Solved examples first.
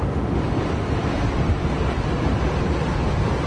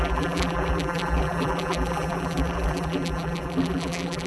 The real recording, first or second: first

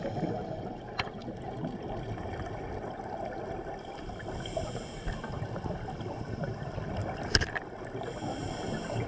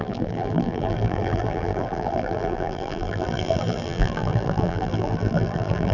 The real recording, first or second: first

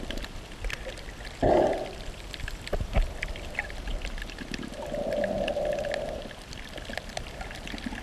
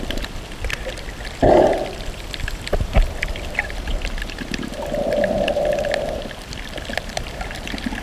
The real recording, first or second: first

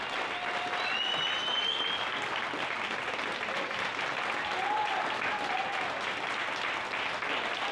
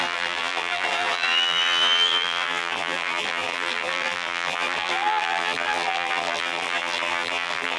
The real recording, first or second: first